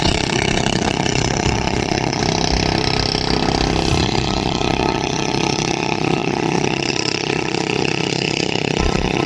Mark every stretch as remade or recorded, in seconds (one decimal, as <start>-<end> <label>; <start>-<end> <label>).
0.0-2.2 remade; 2.2-4.0 recorded; 4.0-9.3 remade